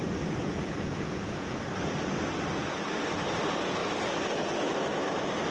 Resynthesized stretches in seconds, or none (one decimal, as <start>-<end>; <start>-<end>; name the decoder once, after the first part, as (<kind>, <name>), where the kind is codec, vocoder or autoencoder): 0.4-1.6 (vocoder, Vocos)

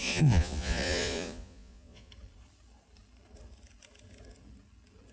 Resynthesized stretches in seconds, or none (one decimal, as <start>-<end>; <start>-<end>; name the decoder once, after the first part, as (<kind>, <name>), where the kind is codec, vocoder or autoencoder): 0.0-2.1 (vocoder, Vocos)

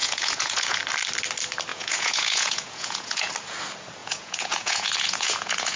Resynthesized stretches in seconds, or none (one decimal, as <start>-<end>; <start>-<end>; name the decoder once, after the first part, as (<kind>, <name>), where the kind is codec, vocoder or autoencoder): 0.0-0.8 (vocoder, Vocos); 1.7-3.3; 4.0-5.8

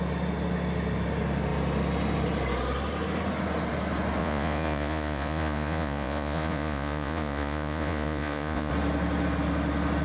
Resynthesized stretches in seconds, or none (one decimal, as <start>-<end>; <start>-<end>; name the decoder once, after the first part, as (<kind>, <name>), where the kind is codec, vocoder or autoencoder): 4.2-8.7 (vocoder, Vocos)

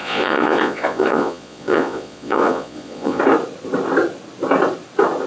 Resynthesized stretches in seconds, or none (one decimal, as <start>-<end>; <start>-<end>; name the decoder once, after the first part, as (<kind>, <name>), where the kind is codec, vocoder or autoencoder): 0.0-3.2 (vocoder, Vocos)